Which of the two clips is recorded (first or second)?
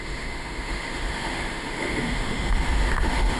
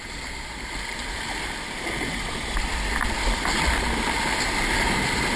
second